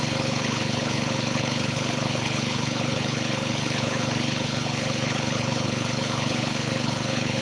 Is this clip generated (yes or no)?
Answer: yes